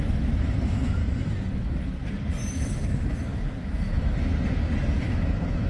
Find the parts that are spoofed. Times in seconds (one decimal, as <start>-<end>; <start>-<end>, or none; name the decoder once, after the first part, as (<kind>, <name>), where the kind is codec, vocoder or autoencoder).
0.0-1.0 (autoencoder, DAC-VAE); 1.5-2.0; 2.5-4.3; 5.0-5.7